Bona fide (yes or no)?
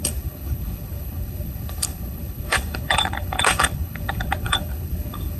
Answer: no